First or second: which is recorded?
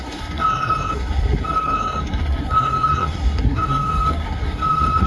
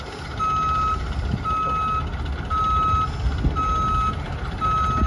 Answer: second